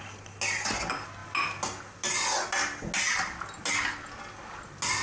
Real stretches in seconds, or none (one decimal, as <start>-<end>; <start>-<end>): 0.0-5.0